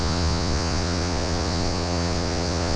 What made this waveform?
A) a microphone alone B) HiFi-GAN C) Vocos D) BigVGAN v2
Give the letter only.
C